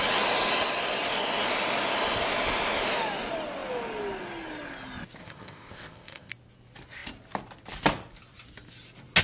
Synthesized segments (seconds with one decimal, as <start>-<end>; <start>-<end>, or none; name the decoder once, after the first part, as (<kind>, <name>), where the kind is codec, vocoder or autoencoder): 5.2-6.3 (codec, ZipCodec)